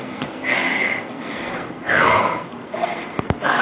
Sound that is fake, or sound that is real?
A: fake